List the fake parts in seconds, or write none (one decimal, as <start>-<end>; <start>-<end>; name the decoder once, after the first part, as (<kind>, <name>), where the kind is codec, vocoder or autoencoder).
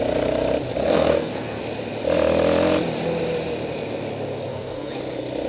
0.8-1.6 (codec, SNAC); 4.5-5.0